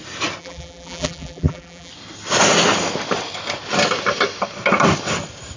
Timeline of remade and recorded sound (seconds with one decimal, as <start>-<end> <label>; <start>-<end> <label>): 0.0-0.4 recorded; 0.4-1.9 remade; 1.9-5.6 recorded